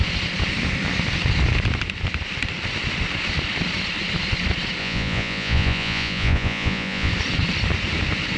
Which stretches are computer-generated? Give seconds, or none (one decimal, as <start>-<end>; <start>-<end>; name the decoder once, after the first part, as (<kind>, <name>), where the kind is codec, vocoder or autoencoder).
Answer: 4.8-7.1 (vocoder, Vocos)